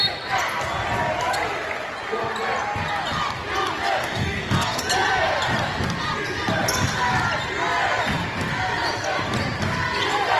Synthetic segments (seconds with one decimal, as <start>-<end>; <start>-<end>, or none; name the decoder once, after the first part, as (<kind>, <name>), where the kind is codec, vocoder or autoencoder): 4.0-4.8 (codec, DAC)